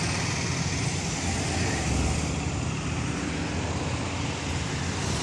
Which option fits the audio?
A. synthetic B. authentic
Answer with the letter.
B